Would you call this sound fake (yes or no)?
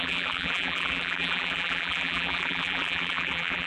yes